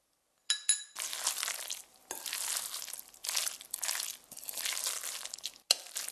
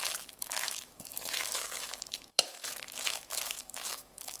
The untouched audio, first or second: first